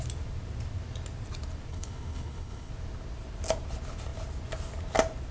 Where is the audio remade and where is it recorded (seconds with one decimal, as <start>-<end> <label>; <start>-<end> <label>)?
0.0-1.7 recorded; 1.7-2.7 remade; 2.7-5.3 recorded